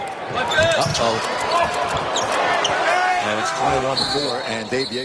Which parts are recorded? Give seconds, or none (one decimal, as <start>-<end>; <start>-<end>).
0.0-3.1; 4.3-5.0